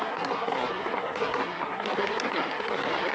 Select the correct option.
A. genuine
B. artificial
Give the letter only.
B